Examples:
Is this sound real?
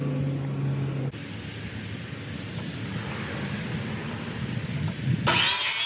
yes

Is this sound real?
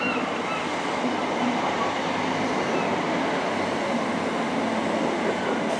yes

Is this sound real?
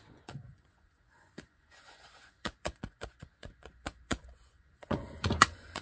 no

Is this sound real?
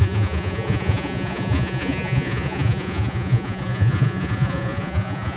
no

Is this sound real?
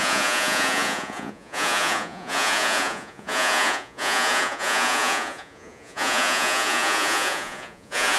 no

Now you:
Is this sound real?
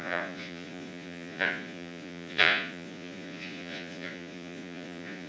no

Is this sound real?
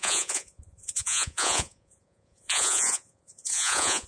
no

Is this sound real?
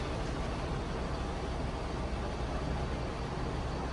yes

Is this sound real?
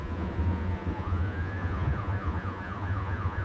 no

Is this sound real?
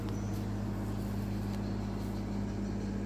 yes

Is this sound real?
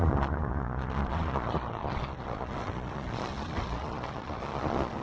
no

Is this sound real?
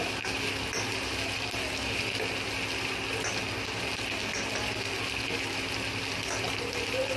yes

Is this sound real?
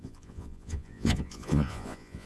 no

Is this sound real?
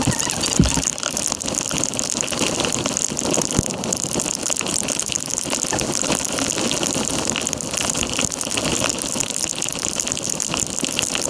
yes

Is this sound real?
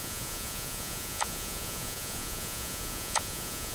no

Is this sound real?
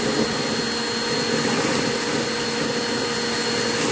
yes